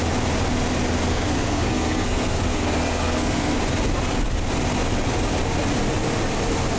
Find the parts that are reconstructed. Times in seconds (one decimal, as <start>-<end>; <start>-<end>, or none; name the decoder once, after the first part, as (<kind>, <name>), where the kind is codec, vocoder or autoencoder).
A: 1.1-3.6 (codec, SNAC)